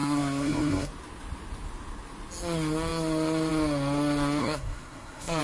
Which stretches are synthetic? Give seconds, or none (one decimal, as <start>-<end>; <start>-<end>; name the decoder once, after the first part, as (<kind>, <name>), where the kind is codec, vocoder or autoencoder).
0.0-0.9 (codec, SNAC); 4.4-5.4